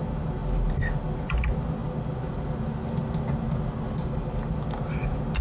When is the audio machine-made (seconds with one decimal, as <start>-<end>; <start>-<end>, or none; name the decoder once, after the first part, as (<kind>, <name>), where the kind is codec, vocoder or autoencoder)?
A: 0.0-0.4 (vocoder, BigVGAN v2); 1.2-1.8; 4.8-5.4